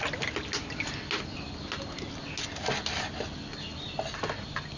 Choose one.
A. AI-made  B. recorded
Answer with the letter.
B